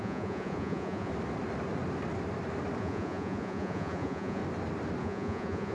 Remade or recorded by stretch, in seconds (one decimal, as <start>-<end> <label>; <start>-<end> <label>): 0.0-1.1 remade; 1.1-2.8 recorded; 2.8-4.4 remade; 4.4-5.0 recorded; 5.0-5.7 remade